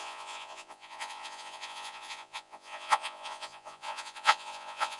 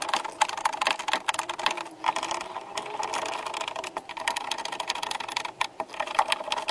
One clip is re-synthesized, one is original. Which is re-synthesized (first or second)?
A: first